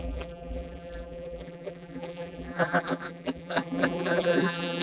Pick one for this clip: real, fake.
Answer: fake